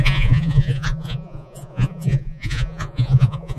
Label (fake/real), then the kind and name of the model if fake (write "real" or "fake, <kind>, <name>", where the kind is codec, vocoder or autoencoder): fake, vocoder, Vocos